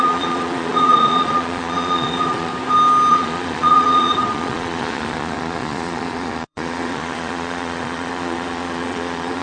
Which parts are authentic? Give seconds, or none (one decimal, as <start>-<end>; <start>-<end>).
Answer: 2.5-3.1